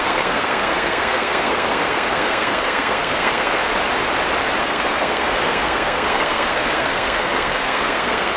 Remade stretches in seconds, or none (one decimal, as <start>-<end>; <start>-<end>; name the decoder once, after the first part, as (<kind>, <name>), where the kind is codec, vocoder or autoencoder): 0.0-3.6 (codec, SNAC); 4.6-8.4